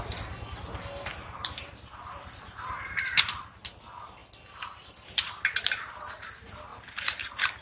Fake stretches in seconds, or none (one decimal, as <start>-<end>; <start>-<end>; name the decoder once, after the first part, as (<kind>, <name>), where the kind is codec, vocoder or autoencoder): 1.1-3.6 (vocoder, BigVGAN v2); 6.7-7.6